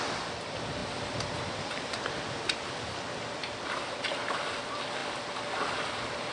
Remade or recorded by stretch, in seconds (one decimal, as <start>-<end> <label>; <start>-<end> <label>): 0.0-6.3 recorded